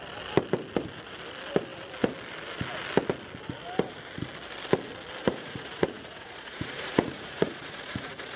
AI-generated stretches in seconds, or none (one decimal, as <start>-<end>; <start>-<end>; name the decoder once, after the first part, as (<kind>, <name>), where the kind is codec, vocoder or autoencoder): 5.2-8.4 (vocoder, Vocos)